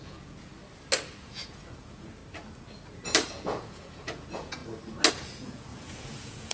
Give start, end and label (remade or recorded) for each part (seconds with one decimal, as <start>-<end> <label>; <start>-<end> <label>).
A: 0.0-0.5 remade; 0.5-1.2 recorded; 1.2-2.2 remade; 2.2-3.3 recorded; 3.3-4.6 remade; 4.6-5.1 recorded; 5.1-6.5 remade